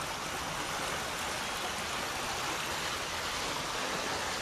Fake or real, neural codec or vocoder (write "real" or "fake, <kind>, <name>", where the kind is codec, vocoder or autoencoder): real